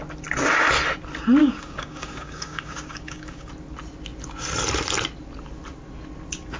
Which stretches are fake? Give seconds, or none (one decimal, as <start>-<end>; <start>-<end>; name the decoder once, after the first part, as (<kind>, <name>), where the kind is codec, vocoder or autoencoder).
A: 1.4-3.5 (codec, DAC)